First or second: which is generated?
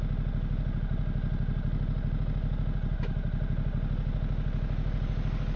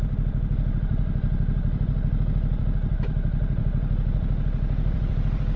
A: second